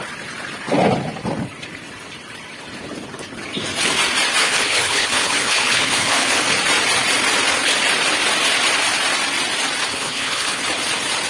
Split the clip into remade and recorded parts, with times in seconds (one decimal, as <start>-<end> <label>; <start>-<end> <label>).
0.0-4.4 recorded; 4.4-6.4 remade; 6.4-9.9 recorded; 9.9-10.6 remade; 10.6-11.3 recorded